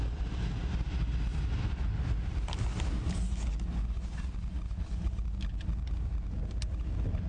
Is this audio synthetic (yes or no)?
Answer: no